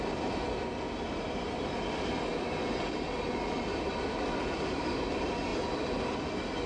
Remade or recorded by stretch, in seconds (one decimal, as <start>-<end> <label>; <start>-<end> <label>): 0.0-6.7 recorded